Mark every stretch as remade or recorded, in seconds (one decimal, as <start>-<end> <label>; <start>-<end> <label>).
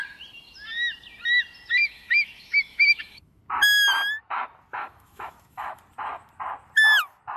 0.0-1.8 recorded; 1.8-3.4 remade; 3.4-4.8 recorded; 4.8-5.8 remade; 5.8-7.4 recorded